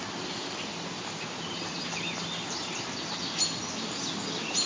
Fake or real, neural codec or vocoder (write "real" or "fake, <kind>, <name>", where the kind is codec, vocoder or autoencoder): real